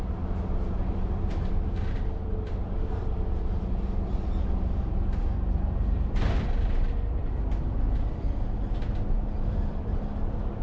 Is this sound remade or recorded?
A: remade